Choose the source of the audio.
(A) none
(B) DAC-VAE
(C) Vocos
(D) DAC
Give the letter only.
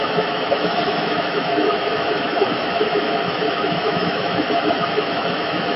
B